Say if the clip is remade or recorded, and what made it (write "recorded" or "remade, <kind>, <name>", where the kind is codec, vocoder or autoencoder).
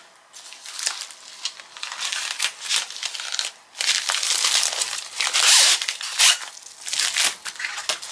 recorded